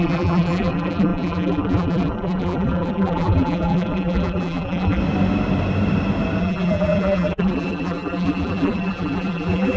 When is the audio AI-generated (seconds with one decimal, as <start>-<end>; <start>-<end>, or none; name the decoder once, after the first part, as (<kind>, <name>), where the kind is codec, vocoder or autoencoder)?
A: 0.0-5.0 (vocoder, BigVGAN v2); 6.4-9.8